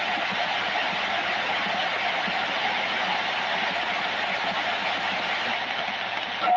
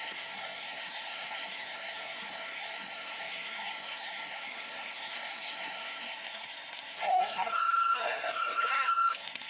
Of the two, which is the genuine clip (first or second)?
first